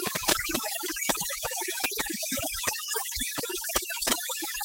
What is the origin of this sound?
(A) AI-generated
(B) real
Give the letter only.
A